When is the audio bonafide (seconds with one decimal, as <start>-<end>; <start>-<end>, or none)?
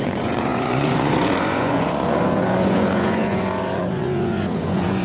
none